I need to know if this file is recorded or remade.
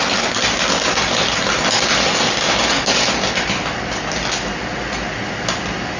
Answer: recorded